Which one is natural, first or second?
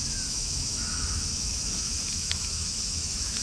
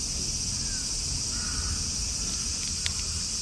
second